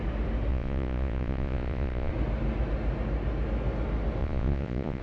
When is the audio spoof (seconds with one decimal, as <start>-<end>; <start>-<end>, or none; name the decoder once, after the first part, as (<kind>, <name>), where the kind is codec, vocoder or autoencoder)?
0.5-2.1 (vocoder, Vocos); 4.2-5.0